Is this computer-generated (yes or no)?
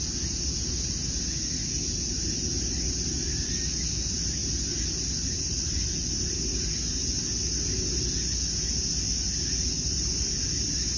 no